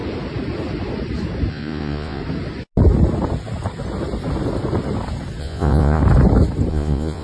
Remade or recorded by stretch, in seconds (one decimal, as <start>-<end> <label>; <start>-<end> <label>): 0.0-1.5 recorded; 1.5-2.2 remade; 2.2-5.4 recorded; 5.4-6.0 remade; 6.0-6.7 recorded; 6.7-7.2 remade